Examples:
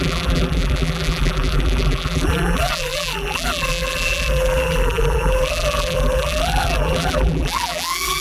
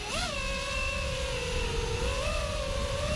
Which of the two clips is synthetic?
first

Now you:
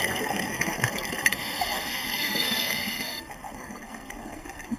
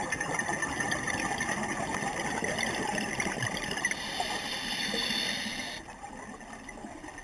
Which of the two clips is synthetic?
first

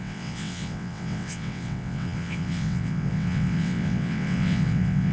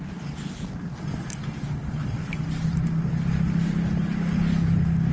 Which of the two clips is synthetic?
first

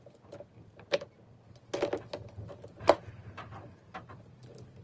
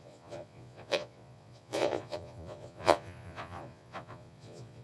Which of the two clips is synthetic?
second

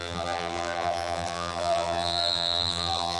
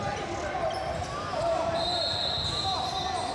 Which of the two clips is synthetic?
first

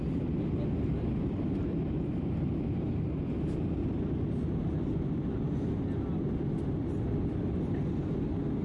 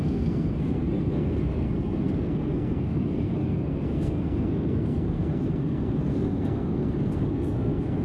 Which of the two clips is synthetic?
second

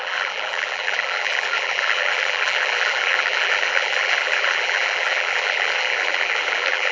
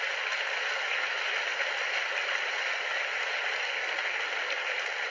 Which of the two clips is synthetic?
first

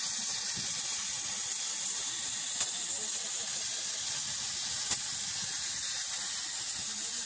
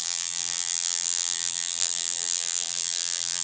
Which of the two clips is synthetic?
second